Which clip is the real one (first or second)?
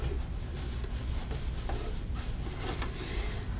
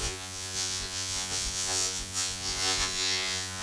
first